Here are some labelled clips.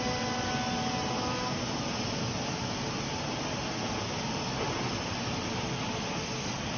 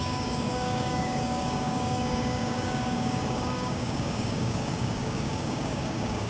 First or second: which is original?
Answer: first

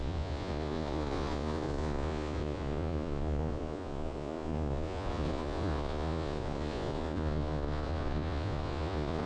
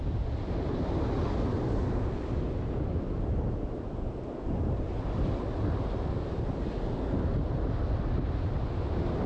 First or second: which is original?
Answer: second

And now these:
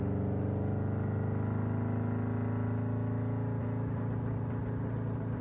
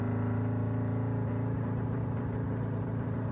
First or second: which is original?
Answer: first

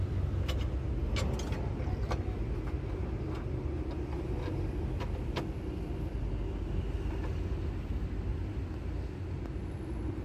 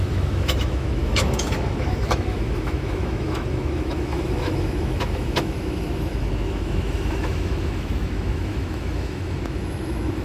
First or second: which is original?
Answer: first